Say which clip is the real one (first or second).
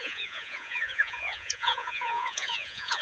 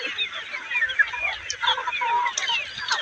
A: second